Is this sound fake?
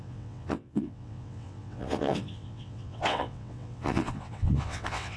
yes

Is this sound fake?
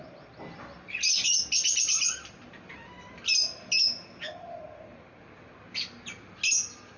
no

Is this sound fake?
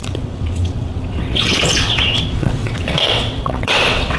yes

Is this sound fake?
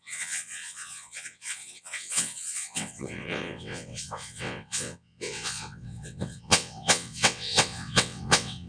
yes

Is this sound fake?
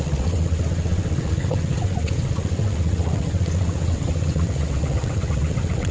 yes